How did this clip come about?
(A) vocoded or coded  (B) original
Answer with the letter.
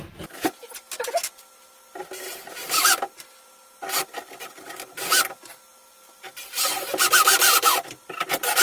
B